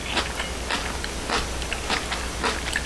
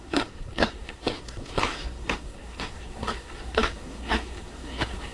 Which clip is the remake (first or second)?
second